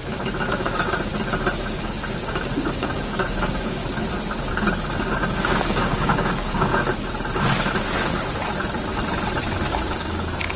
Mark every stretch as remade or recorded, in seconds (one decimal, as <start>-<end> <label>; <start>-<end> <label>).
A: 0.0-0.5 recorded; 0.5-1.1 remade; 1.1-1.8 recorded; 1.8-3.8 remade; 3.8-4.5 recorded; 4.5-6.7 remade; 6.7-9.7 recorded; 9.7-10.6 remade